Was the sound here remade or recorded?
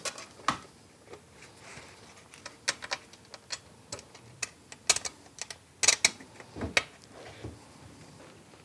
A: recorded